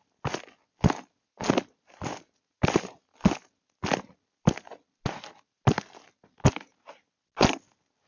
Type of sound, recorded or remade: recorded